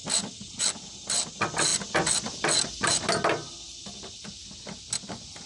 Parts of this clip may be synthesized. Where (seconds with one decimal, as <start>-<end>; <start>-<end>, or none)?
none